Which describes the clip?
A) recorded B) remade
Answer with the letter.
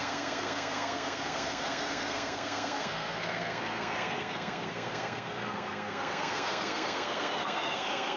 B